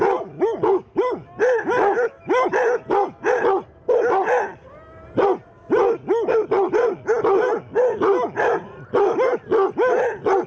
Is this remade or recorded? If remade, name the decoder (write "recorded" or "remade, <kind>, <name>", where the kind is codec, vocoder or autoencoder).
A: recorded